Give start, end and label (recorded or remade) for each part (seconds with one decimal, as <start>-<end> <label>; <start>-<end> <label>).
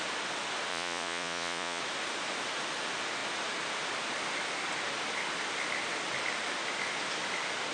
0.0-0.7 recorded; 0.7-1.8 remade; 1.8-7.7 recorded